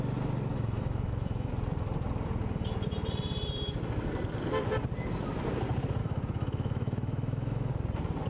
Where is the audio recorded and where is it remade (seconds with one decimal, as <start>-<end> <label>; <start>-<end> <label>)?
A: 0.0-0.5 recorded; 0.5-1.5 remade; 1.5-6.0 recorded; 6.0-7.7 remade; 7.7-8.3 recorded